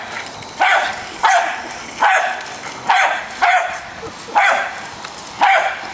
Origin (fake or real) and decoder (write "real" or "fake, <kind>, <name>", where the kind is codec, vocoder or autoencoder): real